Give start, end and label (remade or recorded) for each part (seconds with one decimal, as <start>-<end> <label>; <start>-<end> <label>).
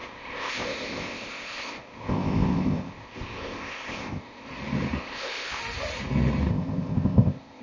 0.0-4.5 remade; 4.5-5.0 recorded; 5.0-5.6 remade; 5.6-6.5 recorded; 6.5-7.6 remade